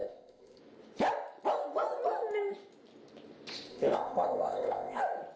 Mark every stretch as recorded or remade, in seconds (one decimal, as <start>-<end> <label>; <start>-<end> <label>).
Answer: 0.0-0.6 remade; 0.6-3.7 recorded; 3.7-5.0 remade; 5.0-5.4 recorded